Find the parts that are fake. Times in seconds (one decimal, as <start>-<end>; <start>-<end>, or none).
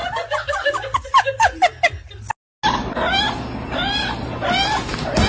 none